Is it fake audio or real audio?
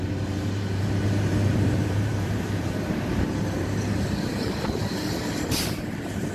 fake